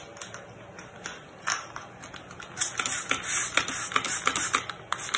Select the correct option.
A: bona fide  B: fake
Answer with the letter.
A